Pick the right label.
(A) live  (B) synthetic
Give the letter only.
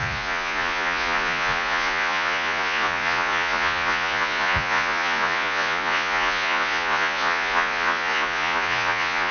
B